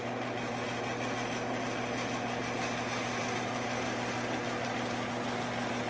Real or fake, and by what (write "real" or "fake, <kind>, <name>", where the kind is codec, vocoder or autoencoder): real